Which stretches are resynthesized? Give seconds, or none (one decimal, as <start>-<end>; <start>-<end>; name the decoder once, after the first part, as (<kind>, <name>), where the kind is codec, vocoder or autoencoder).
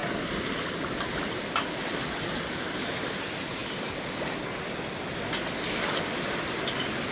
0.0-1.9 (vocoder, BigVGAN v2)